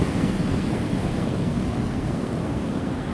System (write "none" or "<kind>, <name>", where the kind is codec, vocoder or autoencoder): codec, SNAC